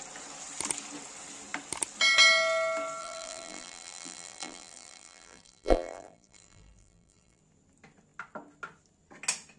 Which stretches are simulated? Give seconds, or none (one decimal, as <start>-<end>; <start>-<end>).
3.0-7.4